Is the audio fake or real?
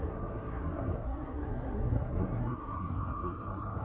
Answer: fake